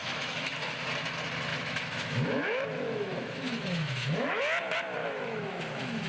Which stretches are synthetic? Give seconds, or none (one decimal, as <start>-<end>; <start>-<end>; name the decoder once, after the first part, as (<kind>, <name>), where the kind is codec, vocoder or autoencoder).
0.0-0.5 (autoencoder, DAC-VAE); 1.5-4.4; 5.0-6.1